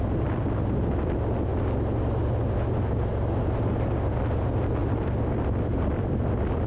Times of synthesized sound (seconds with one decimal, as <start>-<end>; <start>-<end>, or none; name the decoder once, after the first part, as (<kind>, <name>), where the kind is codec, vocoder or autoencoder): 1.5-2.4 (vocoder, BigVGAN v2); 4.8-6.7